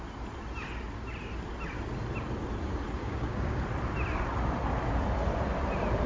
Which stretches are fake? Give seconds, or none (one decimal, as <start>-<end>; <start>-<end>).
3.0-3.6